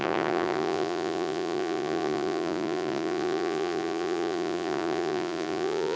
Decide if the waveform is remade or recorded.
remade